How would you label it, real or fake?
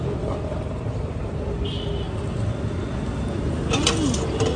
real